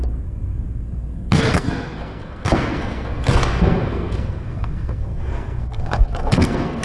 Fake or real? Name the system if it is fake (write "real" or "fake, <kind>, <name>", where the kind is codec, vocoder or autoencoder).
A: fake, codec, SNAC